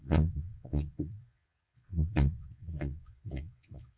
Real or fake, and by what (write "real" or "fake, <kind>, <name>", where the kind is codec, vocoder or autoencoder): fake, vocoder, Vocos